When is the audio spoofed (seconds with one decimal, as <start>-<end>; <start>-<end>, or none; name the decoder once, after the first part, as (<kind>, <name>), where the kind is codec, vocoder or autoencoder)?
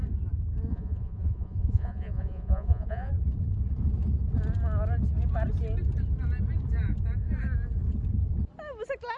0.7-3.1 (vocoder, Vocos)